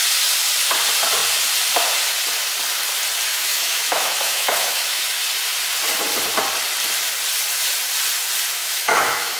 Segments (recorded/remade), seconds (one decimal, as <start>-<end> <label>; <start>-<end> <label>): 0.0-3.3 recorded; 3.3-5.0 remade; 5.0-8.6 recorded; 8.6-9.4 remade